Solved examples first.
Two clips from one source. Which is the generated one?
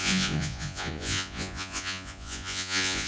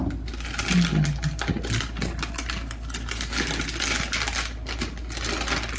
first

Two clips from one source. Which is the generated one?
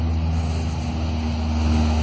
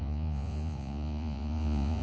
second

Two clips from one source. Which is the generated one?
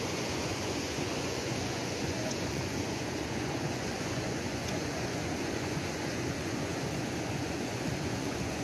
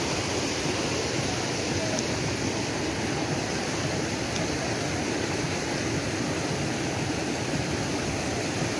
first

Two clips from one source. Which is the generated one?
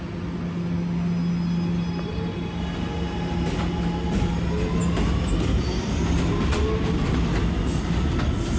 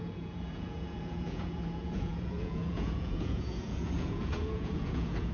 second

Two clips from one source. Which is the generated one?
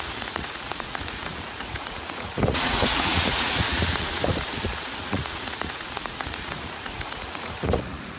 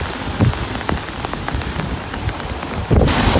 first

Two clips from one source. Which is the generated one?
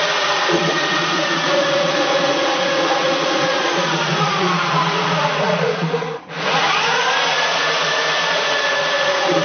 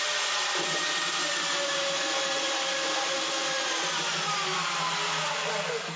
first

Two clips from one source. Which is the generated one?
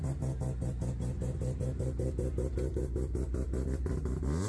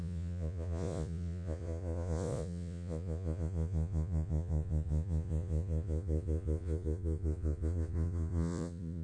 second